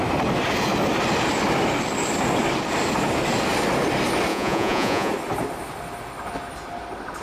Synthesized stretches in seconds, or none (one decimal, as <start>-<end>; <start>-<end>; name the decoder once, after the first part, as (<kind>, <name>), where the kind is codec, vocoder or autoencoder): 4.3-5.1 (vocoder, Vocos)